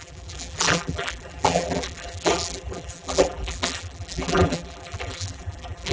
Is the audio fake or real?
fake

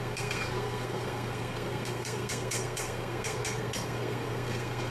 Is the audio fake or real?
fake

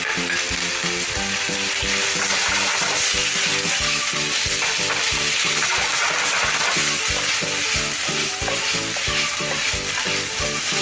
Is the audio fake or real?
real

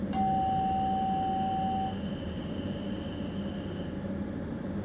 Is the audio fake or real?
real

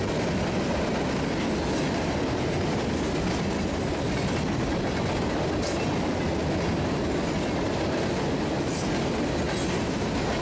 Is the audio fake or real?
real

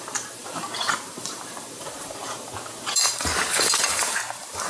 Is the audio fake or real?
fake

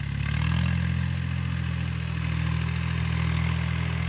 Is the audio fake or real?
real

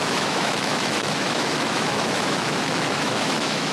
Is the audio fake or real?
fake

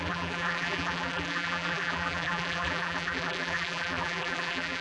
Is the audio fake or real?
fake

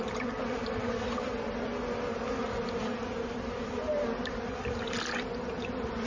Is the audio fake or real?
real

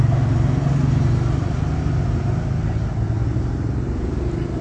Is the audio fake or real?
real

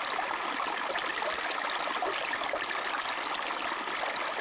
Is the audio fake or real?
real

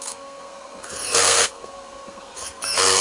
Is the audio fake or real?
fake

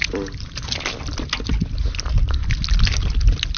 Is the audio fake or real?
real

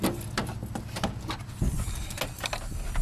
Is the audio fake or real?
real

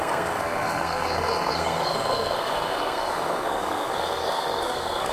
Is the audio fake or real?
fake